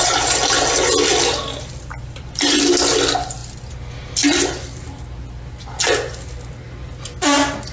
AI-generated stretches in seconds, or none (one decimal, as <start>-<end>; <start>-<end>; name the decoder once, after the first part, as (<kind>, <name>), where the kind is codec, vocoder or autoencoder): none